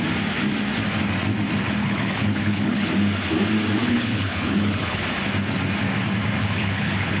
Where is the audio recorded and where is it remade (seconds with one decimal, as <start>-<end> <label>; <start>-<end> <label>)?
0.0-1.8 recorded; 1.8-2.9 remade; 2.9-3.8 recorded; 3.8-5.0 remade; 5.0-6.4 recorded; 6.4-7.2 remade